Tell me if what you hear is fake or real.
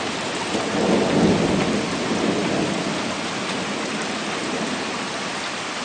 real